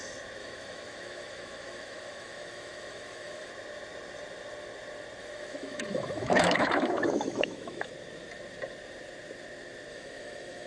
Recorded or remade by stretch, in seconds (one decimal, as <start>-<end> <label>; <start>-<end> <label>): 0.0-0.4 recorded; 0.4-3.5 remade; 3.5-5.2 recorded; 5.2-7.9 remade; 7.9-9.9 recorded; 9.9-10.7 remade